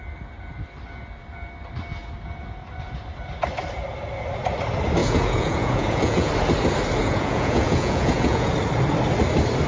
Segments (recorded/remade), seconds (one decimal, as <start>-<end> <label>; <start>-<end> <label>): 0.0-5.0 recorded; 5.0-6.3 remade; 6.3-7.0 recorded; 7.0-8.5 remade; 8.5-9.7 recorded